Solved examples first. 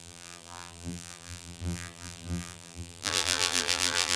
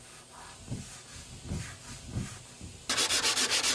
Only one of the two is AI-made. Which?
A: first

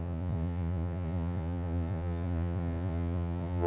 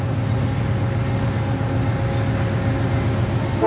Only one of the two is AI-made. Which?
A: first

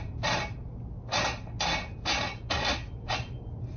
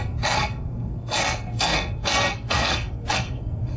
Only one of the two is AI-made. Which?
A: second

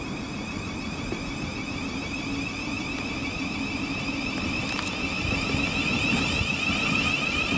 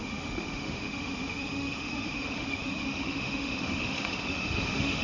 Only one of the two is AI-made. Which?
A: second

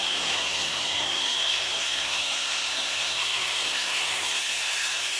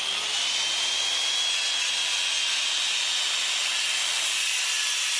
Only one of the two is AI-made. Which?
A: first